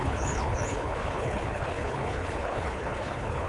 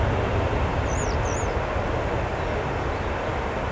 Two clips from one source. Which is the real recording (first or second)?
second